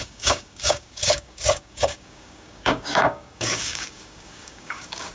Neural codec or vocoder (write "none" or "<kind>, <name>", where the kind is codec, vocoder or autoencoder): codec, DAC